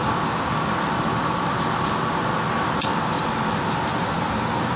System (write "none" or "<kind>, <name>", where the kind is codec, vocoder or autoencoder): none